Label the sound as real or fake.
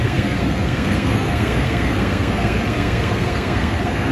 fake